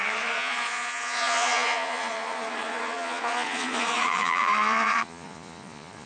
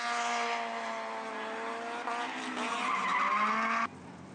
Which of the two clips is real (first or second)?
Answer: second